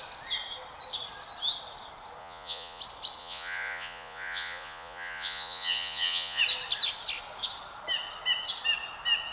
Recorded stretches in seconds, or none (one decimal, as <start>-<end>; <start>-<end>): 0.0-2.2; 2.8-3.2; 6.4-9.3